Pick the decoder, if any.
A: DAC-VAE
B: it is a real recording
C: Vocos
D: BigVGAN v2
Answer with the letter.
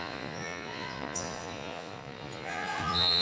C